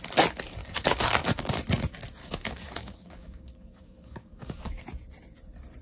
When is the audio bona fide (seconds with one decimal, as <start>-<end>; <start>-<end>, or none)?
0.0-0.6; 1.6-2.2; 4.8-5.8